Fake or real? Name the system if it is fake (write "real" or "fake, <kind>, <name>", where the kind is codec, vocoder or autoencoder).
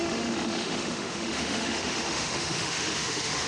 fake, autoencoder, DAC-VAE